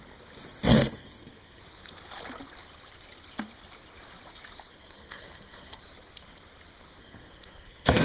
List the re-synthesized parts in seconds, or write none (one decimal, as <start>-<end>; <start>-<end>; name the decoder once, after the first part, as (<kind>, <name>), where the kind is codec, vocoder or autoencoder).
0.7-1.6 (codec, SNAC); 4.7-5.8; 7.0-8.0